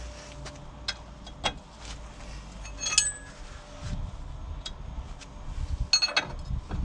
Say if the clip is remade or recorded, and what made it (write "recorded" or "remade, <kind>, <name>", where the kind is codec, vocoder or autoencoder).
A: recorded